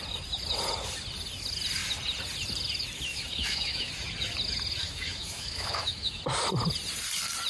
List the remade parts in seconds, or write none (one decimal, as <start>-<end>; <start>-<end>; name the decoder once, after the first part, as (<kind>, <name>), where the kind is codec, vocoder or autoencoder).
3.1-3.9 (autoencoder, DAC-VAE); 4.8-6.2